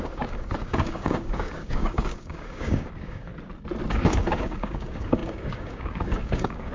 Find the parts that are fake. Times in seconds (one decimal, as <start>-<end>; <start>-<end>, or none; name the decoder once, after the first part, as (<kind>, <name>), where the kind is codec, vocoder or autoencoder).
0.0-3.3 (codec, DAC); 3.9-6.7